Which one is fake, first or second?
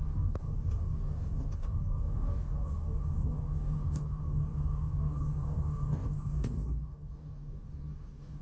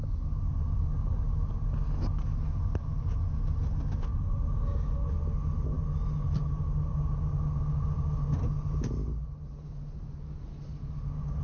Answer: first